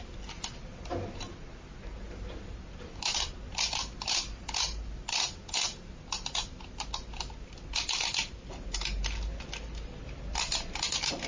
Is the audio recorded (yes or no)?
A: yes